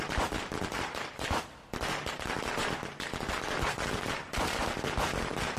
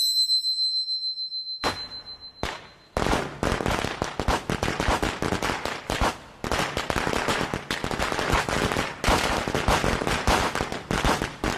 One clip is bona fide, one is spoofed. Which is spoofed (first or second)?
first